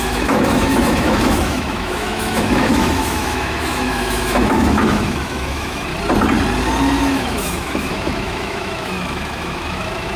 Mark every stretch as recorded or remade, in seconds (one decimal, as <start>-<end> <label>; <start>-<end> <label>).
0.0-5.9 remade; 5.9-7.0 recorded; 7.0-10.2 remade